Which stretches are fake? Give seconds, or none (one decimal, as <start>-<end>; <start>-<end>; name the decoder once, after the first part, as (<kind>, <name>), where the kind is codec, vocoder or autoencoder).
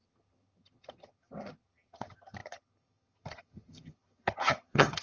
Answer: 0.0-5.0 (vocoder, HiFi-GAN)